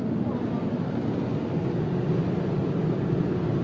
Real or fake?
real